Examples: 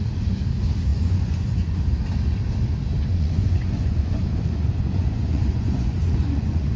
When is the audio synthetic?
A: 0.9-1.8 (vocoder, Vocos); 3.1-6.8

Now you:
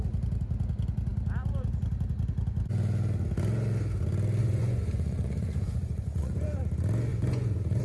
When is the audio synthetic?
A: 4.4-6.6 (vocoder, Vocos); 7.1-7.8

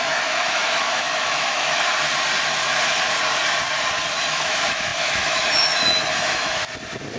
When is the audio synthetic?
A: 0.0-1.9 (autoencoder, DAC-VAE); 4.2-6.6

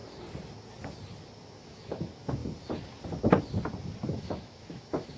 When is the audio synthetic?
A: 1.4-2.4 (autoencoder, DAC-VAE); 4.1-5.2

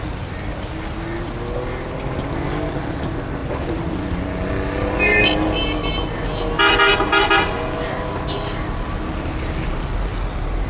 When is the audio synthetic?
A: none

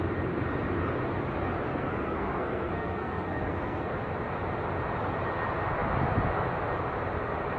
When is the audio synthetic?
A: 1.7-3.9 (codec, SNAC)